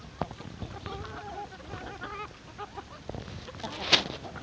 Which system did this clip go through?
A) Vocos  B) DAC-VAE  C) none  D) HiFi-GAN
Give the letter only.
C